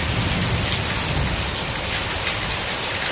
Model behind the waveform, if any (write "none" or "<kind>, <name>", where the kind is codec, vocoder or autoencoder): none